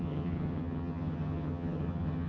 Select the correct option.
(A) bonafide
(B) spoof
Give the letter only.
B